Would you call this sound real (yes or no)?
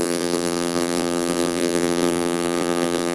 no